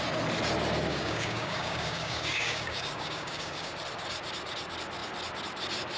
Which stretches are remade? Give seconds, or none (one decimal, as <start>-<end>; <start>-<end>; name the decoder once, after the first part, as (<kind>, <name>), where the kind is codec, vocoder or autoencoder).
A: 0.9-3.7 (codec, DAC)